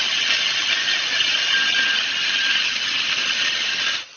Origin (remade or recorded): recorded